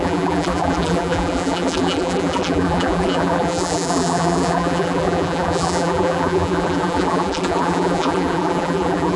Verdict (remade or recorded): remade